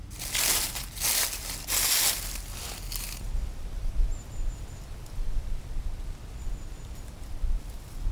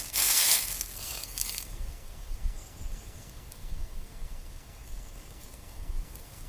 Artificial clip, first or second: second